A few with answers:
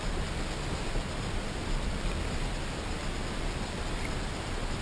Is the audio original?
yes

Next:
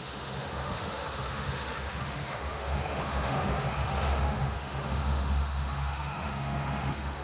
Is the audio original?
no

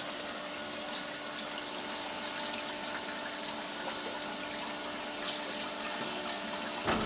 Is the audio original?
yes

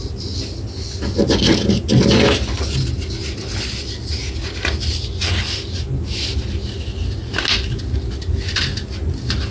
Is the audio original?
yes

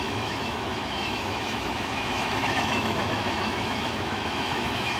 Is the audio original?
no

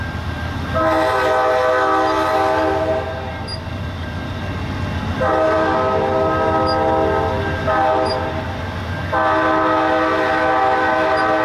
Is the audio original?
yes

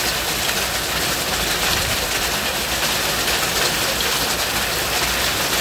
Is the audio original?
yes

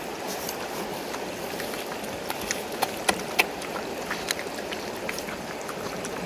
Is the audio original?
yes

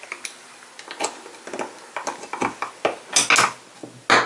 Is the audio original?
yes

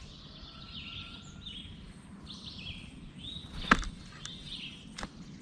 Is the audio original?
yes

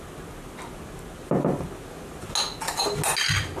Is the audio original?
yes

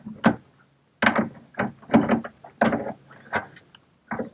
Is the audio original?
yes